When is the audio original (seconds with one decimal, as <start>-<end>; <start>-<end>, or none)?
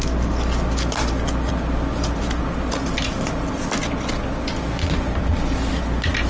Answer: 0.0-6.3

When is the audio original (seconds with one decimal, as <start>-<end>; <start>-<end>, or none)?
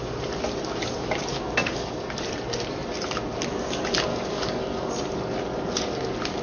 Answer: 0.0-1.3; 2.0-4.1; 4.9-6.4